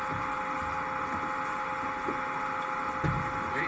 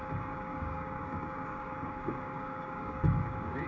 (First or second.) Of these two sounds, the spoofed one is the second